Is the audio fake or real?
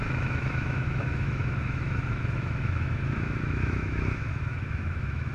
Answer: fake